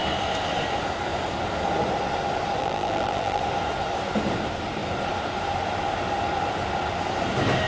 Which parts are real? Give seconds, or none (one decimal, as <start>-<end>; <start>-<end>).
0.0-2.6; 3.4-7.7